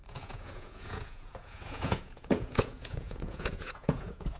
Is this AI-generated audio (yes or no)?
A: yes